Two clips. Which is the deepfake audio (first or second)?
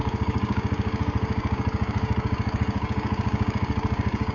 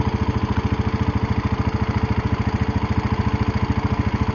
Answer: first